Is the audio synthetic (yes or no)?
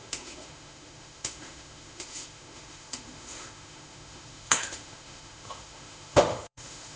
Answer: yes